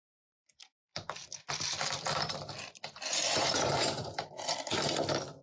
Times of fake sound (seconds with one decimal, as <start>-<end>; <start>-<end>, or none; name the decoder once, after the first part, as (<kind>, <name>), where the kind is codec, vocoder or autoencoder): 3.1-4.1 (vocoder, Vocos)